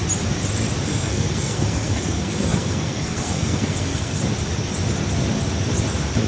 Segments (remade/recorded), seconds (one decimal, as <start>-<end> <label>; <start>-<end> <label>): 0.0-0.9 recorded; 0.9-4.2 remade; 4.2-6.3 recorded